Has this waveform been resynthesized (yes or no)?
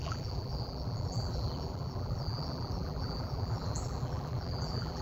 yes